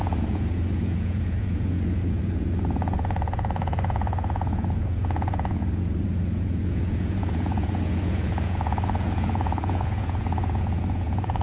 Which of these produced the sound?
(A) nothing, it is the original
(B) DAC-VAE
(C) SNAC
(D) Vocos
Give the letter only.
D